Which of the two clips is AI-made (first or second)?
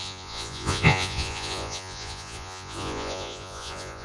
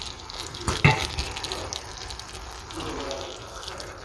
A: first